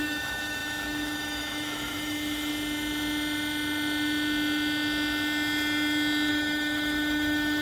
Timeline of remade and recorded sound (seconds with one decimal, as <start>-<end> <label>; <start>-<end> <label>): 0.0-2.5 remade; 2.5-6.3 recorded; 6.3-7.6 remade